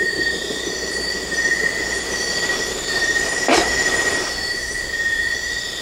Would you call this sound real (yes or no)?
no